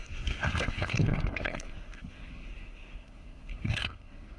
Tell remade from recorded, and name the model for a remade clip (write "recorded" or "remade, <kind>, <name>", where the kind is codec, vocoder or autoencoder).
remade, codec, SNAC